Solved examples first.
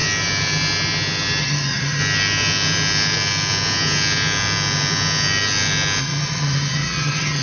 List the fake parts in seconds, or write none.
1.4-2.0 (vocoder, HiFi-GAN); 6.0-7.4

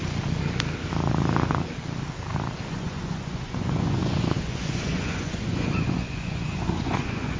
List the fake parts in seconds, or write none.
2.7-7.4 (vocoder, Vocos)

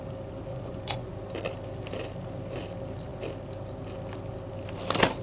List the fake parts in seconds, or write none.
0.5-1.1 (vocoder, Vocos)

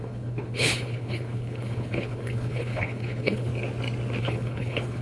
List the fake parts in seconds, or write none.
0.0-3.5 (codec, HILCodec); 4.2-5.0